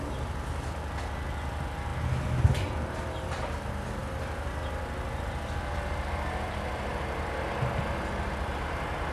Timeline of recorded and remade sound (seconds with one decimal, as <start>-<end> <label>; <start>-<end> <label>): 0.0-9.1 recorded